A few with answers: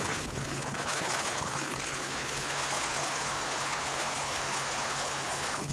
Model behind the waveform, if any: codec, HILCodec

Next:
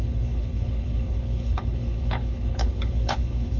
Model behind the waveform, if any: codec, HILCodec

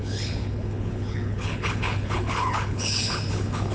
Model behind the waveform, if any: codec, HILCodec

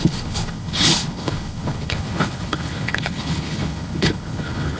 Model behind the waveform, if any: codec, HILCodec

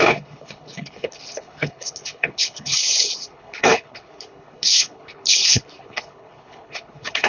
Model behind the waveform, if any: codec, HILCodec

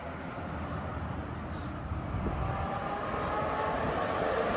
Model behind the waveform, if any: none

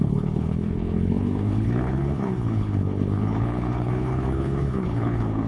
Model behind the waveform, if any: codec, HILCodec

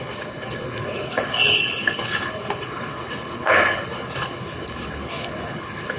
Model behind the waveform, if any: codec, HILCodec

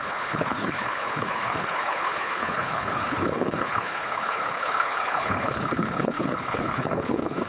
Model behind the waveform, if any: codec, HILCodec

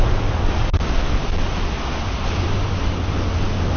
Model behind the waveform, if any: none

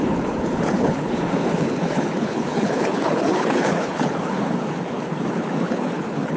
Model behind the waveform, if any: codec, HILCodec